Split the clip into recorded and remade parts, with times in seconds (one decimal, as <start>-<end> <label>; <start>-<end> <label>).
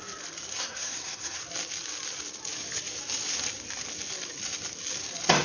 0.0-0.5 recorded; 0.5-1.4 remade; 1.4-5.4 recorded